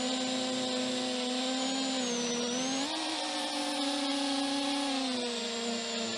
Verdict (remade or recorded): recorded